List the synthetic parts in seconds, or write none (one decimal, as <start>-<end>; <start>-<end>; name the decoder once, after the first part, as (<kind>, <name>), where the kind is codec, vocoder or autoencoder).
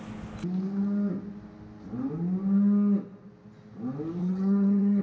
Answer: 4.2-5.0 (vocoder, HiFi-GAN)